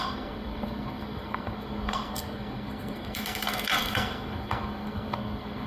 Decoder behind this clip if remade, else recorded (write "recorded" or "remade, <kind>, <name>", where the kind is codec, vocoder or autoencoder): remade, codec, SNAC